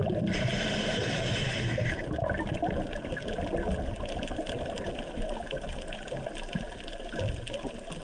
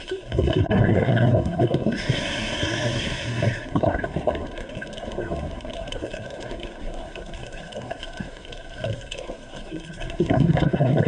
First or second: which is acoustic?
first